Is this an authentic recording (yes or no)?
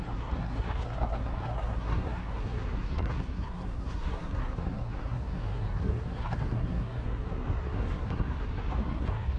no